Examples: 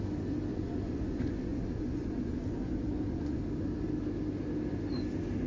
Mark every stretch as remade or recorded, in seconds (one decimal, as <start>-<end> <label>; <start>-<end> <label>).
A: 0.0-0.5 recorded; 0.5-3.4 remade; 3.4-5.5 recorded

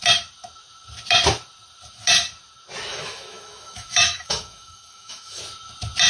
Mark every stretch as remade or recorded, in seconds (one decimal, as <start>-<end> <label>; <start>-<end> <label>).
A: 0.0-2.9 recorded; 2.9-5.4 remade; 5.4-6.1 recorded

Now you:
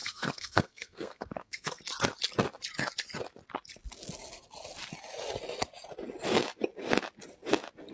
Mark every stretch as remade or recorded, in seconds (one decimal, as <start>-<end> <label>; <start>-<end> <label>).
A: 0.0-1.8 remade; 1.8-7.9 recorded

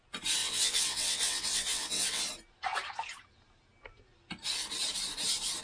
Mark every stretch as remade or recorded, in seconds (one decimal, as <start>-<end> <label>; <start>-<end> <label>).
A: 0.0-0.4 recorded; 0.4-2.2 remade; 2.2-5.6 recorded

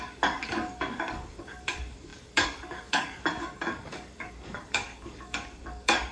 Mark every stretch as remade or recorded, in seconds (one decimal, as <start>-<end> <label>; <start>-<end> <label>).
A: 0.0-6.1 remade

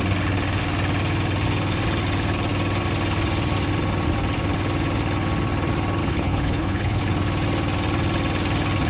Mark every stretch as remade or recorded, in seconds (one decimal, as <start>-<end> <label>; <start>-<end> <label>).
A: 0.0-6.0 recorded; 6.0-7.0 remade; 7.0-8.9 recorded

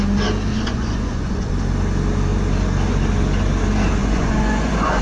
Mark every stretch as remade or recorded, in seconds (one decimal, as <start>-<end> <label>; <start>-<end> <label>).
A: 0.0-0.5 recorded; 0.5-1.5 remade; 1.5-4.0 recorded; 4.0-5.0 remade